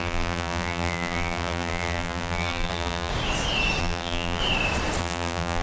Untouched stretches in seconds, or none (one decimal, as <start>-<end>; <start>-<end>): 3.1-3.8; 4.4-5.0